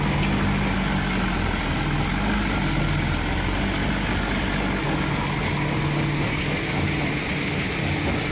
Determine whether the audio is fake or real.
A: real